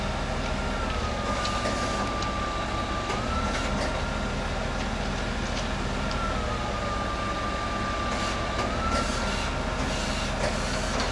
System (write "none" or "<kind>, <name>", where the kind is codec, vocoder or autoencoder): none